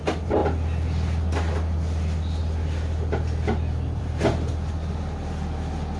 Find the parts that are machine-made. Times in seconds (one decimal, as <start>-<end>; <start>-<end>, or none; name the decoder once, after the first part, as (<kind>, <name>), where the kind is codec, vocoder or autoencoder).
none